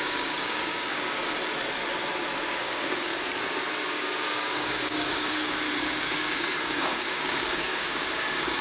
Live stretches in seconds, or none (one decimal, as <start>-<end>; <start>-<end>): 1.2-2.4; 3.1-3.9